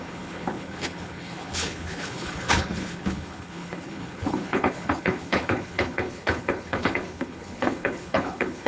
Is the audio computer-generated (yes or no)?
yes